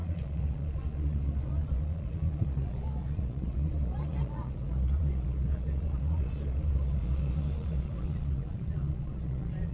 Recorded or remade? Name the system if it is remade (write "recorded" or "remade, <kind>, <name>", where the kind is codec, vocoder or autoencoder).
remade, vocoder, Vocos